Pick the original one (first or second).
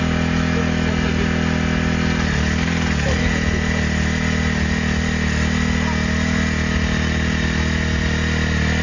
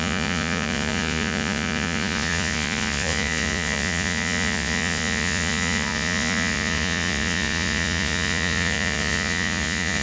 first